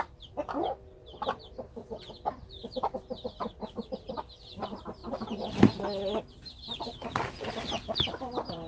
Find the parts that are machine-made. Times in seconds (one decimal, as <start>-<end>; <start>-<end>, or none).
none